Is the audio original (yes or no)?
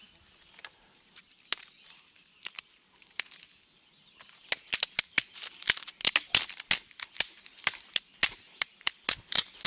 yes